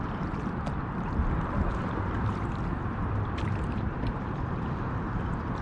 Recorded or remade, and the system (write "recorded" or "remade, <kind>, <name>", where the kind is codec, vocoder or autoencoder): remade, vocoder, BigVGAN v2